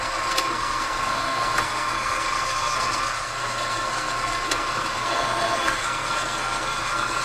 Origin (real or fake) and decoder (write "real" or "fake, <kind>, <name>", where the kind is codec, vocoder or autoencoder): fake, codec, SNAC